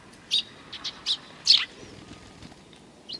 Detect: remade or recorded recorded